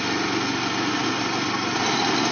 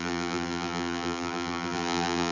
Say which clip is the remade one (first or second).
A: second